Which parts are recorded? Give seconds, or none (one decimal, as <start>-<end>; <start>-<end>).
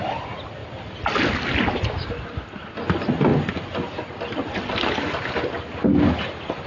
0.0-6.7